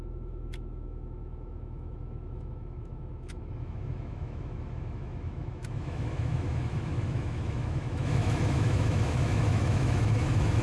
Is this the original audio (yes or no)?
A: no